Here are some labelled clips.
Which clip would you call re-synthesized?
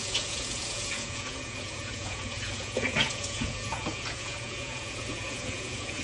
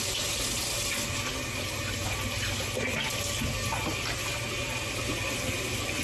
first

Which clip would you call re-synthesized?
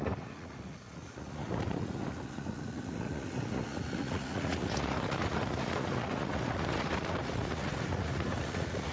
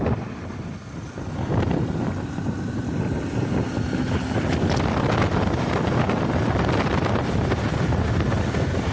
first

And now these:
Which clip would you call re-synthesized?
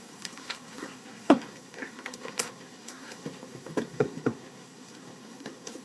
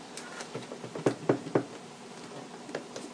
first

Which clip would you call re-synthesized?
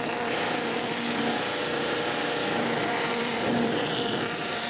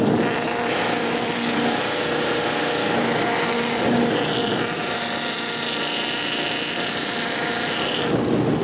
first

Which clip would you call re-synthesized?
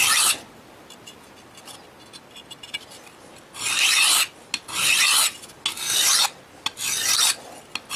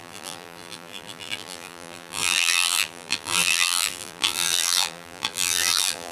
second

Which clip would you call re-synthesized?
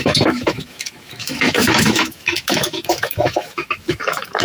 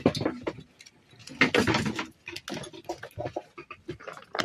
first